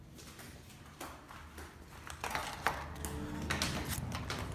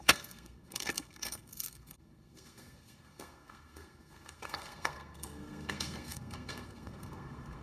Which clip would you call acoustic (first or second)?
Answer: first